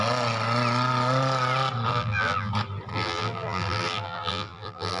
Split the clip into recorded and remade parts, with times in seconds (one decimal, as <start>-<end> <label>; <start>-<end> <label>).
0.0-1.9 recorded; 1.9-2.5 remade; 2.5-2.9 recorded; 2.9-5.0 remade